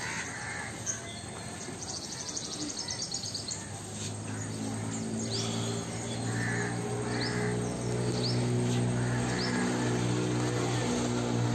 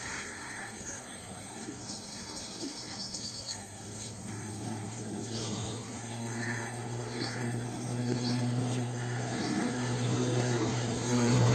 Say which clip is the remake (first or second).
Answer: second